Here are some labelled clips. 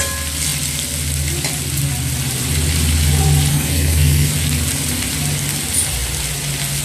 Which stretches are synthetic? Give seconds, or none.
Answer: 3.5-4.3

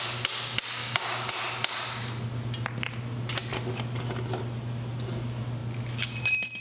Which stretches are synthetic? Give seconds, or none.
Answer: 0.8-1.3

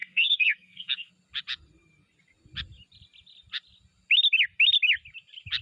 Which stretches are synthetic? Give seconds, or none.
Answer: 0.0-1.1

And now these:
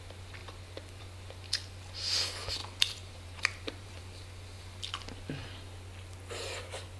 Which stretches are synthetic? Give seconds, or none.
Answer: 2.6-4.0

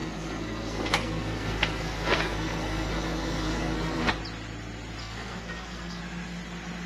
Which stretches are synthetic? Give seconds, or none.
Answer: 0.0-4.1; 5.0-6.0

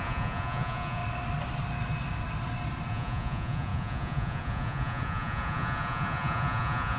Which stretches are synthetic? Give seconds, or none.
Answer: 0.0-1.0; 2.9-7.0